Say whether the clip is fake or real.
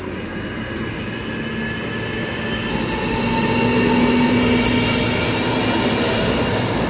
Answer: real